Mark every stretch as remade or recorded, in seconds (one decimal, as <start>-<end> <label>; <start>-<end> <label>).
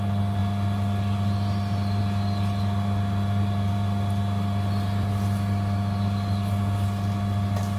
0.0-7.8 recorded